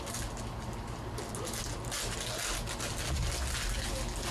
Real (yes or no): yes